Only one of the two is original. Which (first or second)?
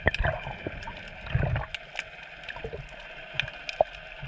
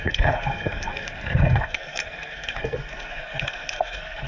first